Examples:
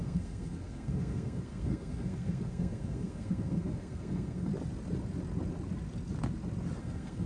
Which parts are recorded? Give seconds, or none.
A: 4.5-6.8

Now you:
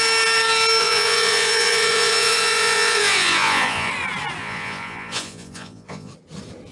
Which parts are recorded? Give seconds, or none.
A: 0.0-0.8; 3.9-4.4; 6.1-6.7

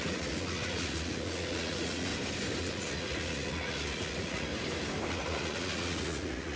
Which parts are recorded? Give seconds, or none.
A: 2.1-2.6; 4.5-5.1

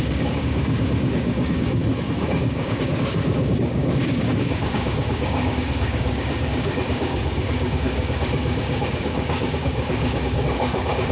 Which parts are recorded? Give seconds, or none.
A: 1.8-2.3